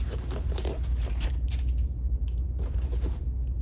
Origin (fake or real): fake